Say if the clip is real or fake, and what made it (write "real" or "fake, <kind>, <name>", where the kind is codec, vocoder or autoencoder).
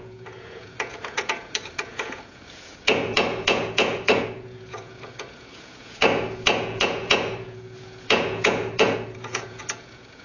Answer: fake, vocoder, Vocos